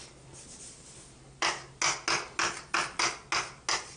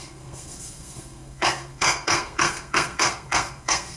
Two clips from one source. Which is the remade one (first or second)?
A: second